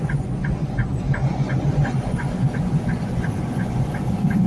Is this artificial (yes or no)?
yes